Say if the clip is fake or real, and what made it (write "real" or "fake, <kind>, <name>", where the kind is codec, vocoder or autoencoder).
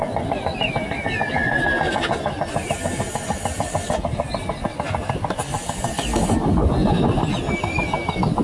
real